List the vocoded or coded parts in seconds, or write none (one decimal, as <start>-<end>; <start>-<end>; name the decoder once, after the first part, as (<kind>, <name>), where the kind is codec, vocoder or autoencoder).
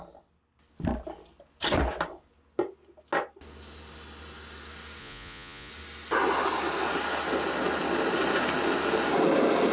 5.0-5.7 (vocoder, Vocos)